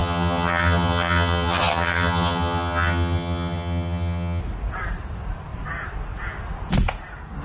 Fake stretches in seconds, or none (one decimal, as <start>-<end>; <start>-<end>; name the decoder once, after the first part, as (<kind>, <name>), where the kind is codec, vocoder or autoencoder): 0.0-4.4 (vocoder, HiFi-GAN)